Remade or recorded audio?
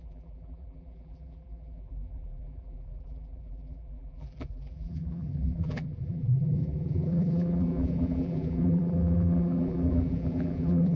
remade